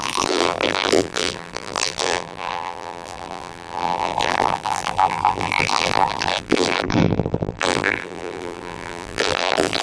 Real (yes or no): no